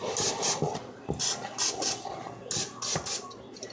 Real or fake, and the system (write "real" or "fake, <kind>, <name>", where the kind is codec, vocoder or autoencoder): real